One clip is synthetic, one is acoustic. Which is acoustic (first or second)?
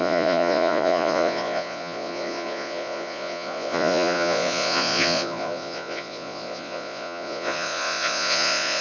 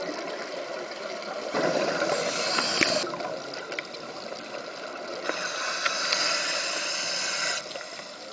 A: second